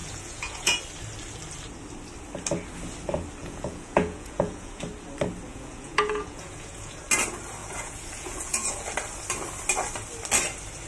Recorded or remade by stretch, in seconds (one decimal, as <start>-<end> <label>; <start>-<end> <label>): 0.0-0.8 remade; 0.8-3.4 recorded; 3.4-4.8 remade; 4.8-5.5 recorded; 5.5-7.0 remade; 7.0-7.6 recorded; 7.6-8.8 remade; 8.8-10.9 recorded